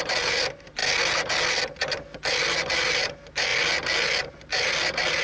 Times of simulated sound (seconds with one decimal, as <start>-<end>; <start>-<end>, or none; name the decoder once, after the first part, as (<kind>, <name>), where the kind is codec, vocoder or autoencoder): 0.0-0.8 (vocoder, BigVGAN v2); 1.5-3.5; 4.2-5.2